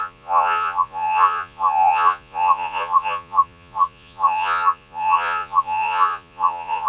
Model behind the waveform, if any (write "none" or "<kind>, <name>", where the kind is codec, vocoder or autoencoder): vocoder, Vocos